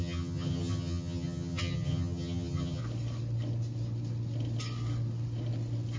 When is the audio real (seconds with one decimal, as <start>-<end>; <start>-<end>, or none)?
2.8-6.0